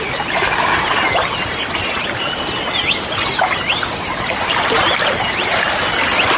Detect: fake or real real